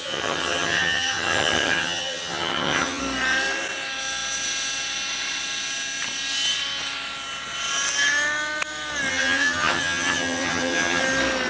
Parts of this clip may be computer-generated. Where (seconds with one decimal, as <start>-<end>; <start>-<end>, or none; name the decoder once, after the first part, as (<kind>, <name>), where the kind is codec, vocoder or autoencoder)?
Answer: 0.0-3.0 (vocoder, HiFi-GAN); 9.1-11.0